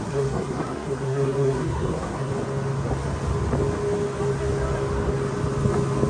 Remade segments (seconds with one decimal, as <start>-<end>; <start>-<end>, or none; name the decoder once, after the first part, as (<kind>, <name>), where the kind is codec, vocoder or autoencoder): 0.0-2.3 (codec, SNAC)